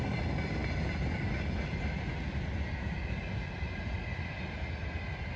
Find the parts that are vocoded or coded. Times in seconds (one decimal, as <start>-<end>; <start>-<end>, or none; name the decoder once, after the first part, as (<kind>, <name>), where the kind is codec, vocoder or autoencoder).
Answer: none